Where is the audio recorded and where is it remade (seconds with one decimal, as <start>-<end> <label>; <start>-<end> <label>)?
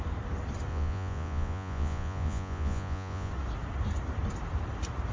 0.0-0.7 recorded; 0.7-3.3 remade; 3.3-5.1 recorded